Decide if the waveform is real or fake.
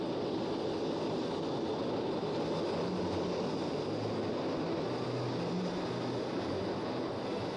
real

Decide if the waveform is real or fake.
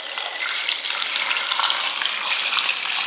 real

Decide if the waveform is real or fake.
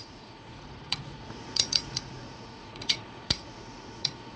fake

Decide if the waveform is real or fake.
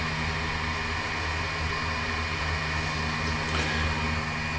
real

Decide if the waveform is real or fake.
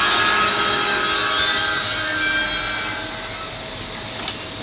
real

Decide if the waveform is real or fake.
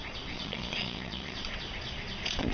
fake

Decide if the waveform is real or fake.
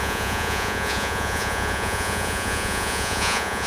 fake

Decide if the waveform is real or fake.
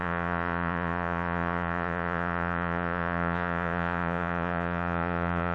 fake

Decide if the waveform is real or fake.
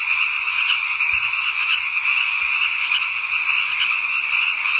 fake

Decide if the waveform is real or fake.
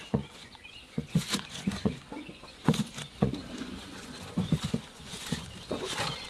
fake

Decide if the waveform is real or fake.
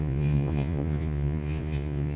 fake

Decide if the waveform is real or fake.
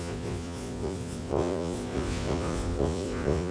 fake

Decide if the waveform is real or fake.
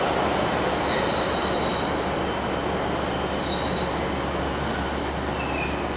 real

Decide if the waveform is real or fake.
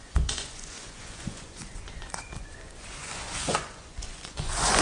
fake